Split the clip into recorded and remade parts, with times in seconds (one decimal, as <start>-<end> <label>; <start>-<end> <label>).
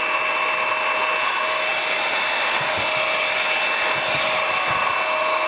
0.0-5.5 recorded